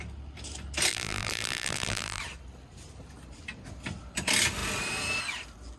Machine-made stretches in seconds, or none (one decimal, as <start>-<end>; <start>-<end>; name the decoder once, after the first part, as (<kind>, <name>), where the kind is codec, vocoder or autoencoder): 0.9-2.2 (vocoder, BigVGAN v2)